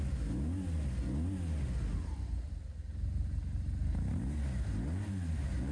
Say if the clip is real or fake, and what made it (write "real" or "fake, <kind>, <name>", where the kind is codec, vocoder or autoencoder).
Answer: real